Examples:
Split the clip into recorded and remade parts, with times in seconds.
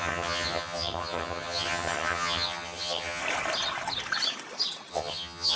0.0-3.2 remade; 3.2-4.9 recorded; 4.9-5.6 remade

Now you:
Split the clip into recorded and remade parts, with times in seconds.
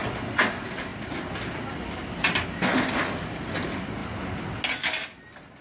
0.0-5.6 recorded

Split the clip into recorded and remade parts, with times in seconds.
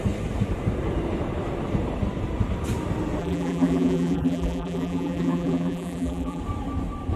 0.0-3.2 recorded; 3.2-6.4 remade; 6.4-7.2 recorded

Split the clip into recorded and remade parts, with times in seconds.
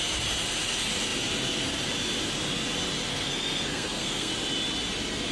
0.0-3.1 recorded; 3.1-4.3 remade; 4.3-5.3 recorded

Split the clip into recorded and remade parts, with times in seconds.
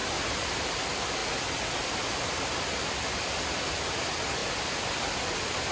0.0-5.7 recorded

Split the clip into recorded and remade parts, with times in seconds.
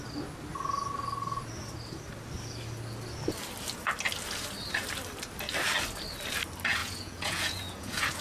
0.0-6.8 recorded; 6.8-8.2 remade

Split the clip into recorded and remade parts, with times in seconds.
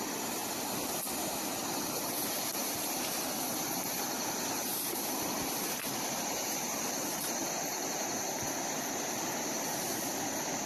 0.0-0.4 remade; 0.4-1.1 recorded; 1.1-10.7 remade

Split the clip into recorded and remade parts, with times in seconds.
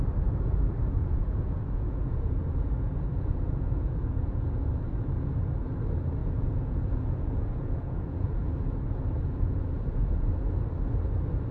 0.0-1.0 recorded; 1.0-4.7 remade; 4.7-6.2 recorded; 6.2-10.3 remade; 10.3-11.5 recorded